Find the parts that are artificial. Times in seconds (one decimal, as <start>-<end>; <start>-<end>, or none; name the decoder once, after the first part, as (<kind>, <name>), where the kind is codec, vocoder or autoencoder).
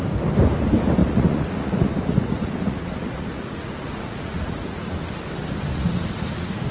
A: 1.0-5.0 (vocoder, Vocos); 5.7-6.7